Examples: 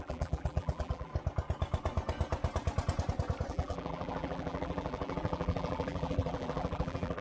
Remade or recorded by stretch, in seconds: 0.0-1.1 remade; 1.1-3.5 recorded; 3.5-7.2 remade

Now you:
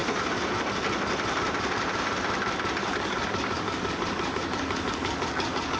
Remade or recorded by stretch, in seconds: 0.0-2.8 recorded; 2.8-5.8 remade

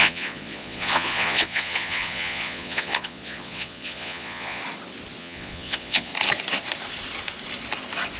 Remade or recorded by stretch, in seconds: 0.0-4.6 remade; 4.6-5.2 recorded; 5.2-6.1 remade; 6.1-8.2 recorded

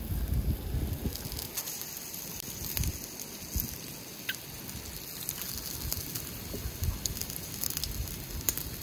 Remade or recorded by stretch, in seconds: 0.0-8.8 recorded